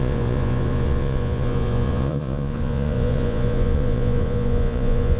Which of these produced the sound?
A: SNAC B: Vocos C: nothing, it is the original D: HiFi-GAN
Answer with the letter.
B